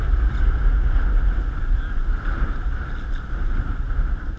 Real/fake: real